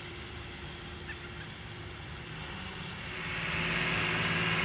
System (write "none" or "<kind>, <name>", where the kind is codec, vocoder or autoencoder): none